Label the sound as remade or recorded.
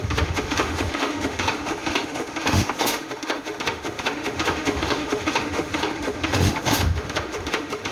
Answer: remade